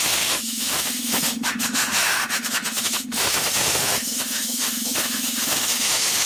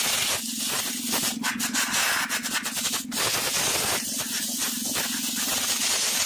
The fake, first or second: first